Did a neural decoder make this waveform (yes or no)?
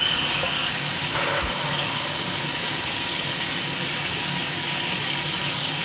yes